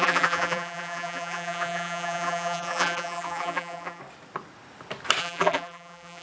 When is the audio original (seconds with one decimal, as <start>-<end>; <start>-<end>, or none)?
4.0-5.2